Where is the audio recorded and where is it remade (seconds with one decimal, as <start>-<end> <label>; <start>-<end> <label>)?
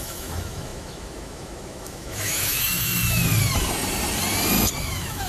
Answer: 0.0-3.2 remade; 3.2-4.8 recorded; 4.8-5.3 remade